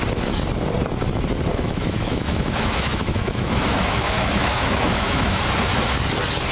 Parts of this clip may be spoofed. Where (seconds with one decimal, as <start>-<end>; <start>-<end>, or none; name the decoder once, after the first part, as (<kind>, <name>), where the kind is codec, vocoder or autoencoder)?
1.5-5.4 (autoencoder, DAC-VAE)